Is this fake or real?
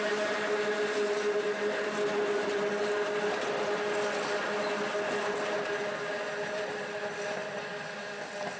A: real